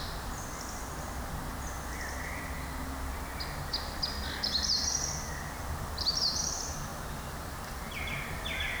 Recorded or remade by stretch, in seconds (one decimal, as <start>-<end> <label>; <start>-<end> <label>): 0.0-8.8 recorded